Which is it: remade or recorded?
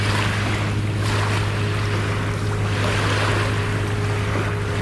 recorded